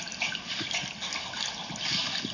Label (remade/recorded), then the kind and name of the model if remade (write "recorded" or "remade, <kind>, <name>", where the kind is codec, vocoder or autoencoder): recorded